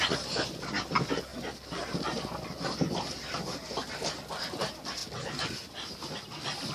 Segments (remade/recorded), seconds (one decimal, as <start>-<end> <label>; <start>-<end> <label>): 0.0-6.7 recorded